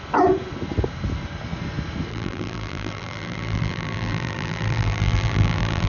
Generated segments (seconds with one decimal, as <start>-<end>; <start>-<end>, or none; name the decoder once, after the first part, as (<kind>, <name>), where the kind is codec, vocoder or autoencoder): 2.1-5.9 (vocoder, BigVGAN v2)